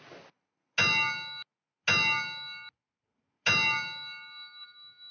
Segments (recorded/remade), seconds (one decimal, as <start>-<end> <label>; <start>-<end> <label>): 0.0-5.1 recorded